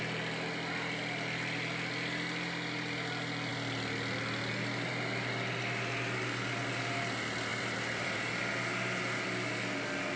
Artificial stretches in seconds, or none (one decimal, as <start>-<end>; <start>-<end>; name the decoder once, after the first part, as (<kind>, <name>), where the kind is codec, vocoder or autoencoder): 7.5-8.4 (vocoder, BigVGAN v2)